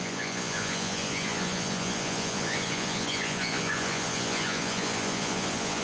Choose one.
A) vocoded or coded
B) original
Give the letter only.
A